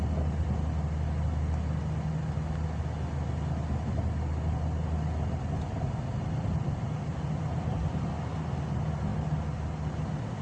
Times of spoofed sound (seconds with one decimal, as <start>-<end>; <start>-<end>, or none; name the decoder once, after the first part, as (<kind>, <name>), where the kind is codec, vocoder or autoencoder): none